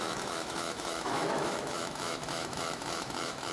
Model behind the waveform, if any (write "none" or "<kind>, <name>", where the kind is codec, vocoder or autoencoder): autoencoder, DAC-VAE